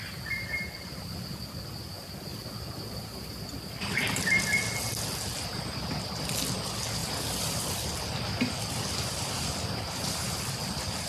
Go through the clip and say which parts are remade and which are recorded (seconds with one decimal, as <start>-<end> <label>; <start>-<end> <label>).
0.0-2.3 recorded; 2.3-4.4 remade; 4.4-7.0 recorded; 7.0-11.1 remade